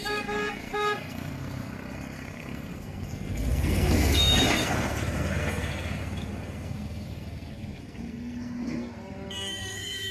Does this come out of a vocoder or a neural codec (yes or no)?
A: yes